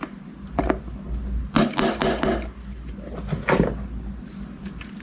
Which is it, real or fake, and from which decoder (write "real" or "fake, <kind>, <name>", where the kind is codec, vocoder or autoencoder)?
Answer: real